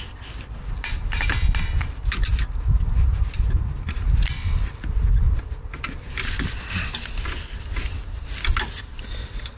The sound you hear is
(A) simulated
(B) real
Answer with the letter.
B